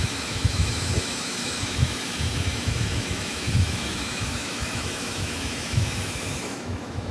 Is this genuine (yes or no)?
no